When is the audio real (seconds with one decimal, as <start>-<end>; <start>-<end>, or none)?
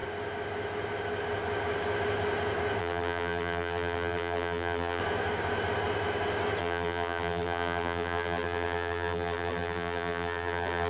0.0-2.8; 5.0-6.6